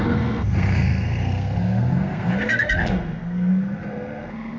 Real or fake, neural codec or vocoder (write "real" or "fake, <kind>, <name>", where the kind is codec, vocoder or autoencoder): fake, codec, SNAC